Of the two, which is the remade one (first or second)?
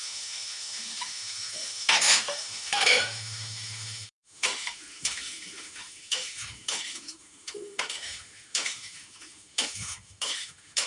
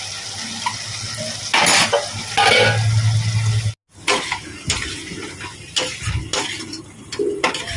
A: first